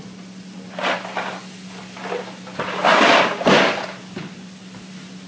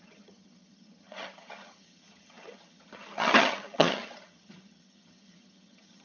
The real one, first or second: first